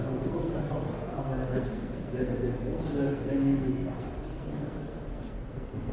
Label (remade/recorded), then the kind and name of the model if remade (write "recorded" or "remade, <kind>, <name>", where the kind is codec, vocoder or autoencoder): remade, codec, SNAC